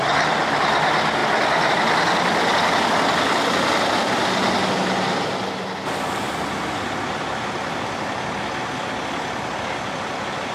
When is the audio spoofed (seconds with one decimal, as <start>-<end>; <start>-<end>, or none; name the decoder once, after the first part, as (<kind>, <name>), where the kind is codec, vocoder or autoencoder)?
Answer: none

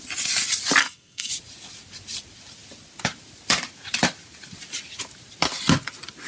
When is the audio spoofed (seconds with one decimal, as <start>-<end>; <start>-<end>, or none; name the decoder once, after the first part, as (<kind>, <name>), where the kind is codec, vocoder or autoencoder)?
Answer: 0.8-1.3 (codec, SNAC)

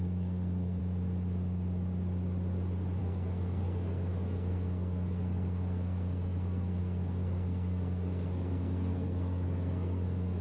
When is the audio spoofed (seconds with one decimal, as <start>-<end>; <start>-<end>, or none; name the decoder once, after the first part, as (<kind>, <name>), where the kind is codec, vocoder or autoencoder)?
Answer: 0.0-0.8 (codec, SNAC); 3.0-10.4

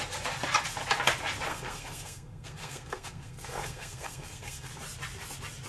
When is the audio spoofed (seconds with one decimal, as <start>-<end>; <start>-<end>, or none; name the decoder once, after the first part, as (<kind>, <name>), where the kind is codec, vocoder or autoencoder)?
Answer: 1.5-4.7 (codec, SNAC)

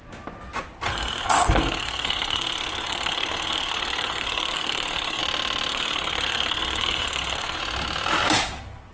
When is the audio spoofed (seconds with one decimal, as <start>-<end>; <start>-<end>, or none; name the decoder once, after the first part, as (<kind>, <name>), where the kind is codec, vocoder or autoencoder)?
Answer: 0.9-5.2 (codec, SNAC); 5.7-7.6

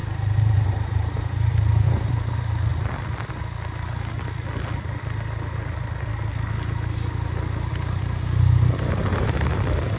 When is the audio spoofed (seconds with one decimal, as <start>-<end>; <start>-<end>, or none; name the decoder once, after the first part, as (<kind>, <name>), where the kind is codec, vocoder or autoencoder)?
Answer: 0.0-2.7 (vocoder, BigVGAN v2); 7.7-10.0